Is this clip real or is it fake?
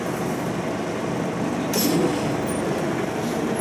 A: real